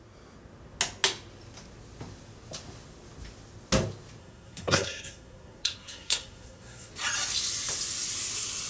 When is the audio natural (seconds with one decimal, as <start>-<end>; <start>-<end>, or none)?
0.0-4.2; 6.9-8.7